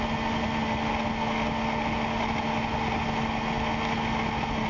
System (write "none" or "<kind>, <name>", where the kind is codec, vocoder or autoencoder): none